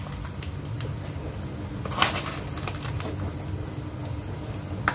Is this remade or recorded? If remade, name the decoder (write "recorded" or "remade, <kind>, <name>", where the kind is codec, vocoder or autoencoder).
recorded